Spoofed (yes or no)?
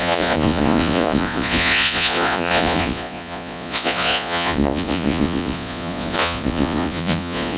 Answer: yes